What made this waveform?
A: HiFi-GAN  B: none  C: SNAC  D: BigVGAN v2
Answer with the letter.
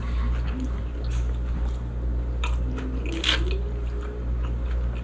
B